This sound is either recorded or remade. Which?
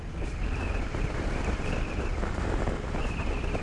recorded